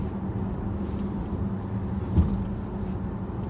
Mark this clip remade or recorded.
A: recorded